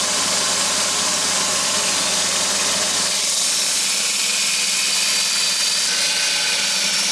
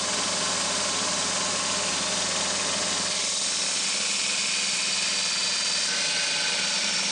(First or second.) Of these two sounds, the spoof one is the second